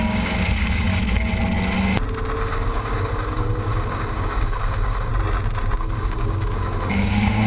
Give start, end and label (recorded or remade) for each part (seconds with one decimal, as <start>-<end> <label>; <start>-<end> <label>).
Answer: 0.0-1.3 remade; 1.3-2.4 recorded; 2.4-5.1 remade; 5.1-5.8 recorded; 5.8-7.5 remade